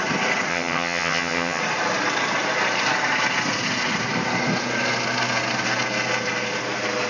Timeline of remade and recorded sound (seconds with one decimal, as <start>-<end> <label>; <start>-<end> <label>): 0.0-0.5 recorded; 0.5-1.6 remade; 1.6-7.1 recorded